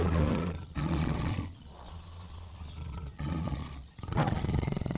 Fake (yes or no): yes